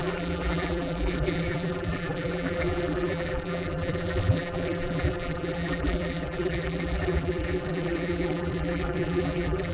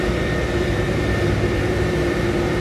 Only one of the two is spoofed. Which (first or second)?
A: first